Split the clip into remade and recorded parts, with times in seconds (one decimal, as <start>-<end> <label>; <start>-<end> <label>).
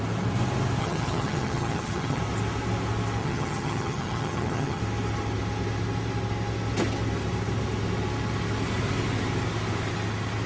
0.0-0.8 recorded; 0.8-2.2 remade; 2.2-3.2 recorded; 3.2-4.8 remade; 4.8-10.5 recorded